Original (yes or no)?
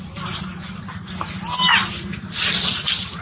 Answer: yes